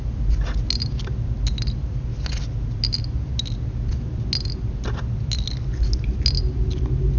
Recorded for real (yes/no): yes